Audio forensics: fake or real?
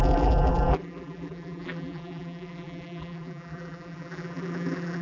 fake